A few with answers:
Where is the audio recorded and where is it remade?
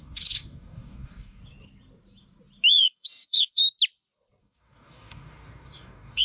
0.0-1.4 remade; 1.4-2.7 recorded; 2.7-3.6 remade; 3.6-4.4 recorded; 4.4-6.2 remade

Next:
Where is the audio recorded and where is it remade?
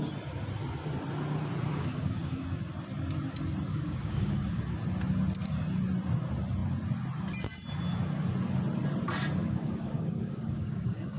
0.0-1.7 recorded; 1.7-2.4 remade; 2.4-3.7 recorded; 3.7-4.6 remade; 4.6-9.4 recorded; 9.4-11.2 remade